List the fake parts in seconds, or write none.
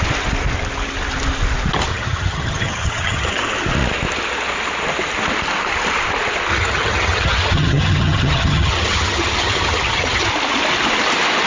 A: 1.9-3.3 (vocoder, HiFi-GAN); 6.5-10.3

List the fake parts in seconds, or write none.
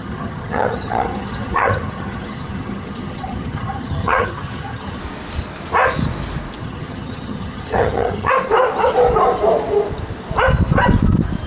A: 0.0-5.0 (vocoder, HiFi-GAN); 6.6-8.3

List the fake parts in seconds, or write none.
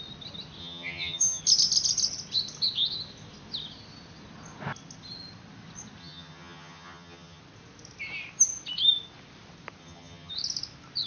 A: 0.6-1.4 (vocoder, HiFi-GAN); 6.0-7.4; 9.8-10.3